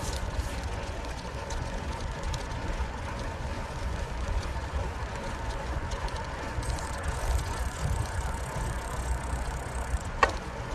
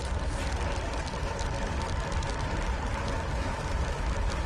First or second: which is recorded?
second